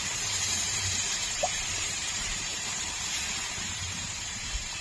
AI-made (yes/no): yes